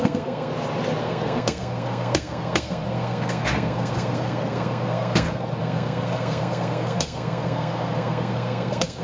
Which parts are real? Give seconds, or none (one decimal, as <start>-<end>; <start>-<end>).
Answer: 0.5-1.0